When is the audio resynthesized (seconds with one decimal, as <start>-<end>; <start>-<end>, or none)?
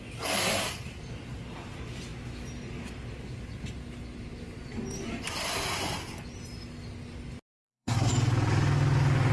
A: 7.5-8.1